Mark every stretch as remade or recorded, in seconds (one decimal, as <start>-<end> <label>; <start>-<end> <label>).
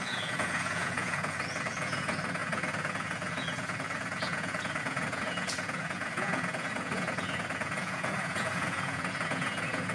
0.0-9.9 remade